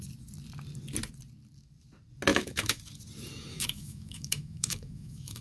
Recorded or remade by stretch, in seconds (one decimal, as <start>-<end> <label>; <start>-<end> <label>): 0.0-2.3 recorded; 2.3-2.8 remade; 2.8-3.5 recorded; 3.5-5.4 remade